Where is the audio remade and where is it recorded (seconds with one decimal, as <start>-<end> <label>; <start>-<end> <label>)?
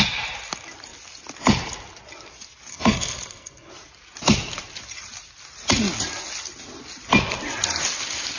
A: 0.0-2.7 recorded; 2.7-3.7 remade; 3.7-8.4 recorded